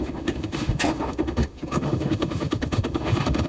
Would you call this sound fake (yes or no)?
yes